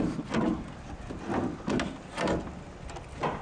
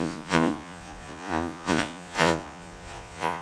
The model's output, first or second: second